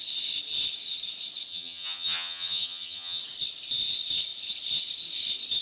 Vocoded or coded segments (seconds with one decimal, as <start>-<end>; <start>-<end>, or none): 1.5-3.2